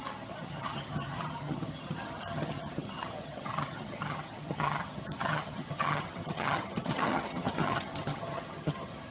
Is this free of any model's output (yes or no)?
no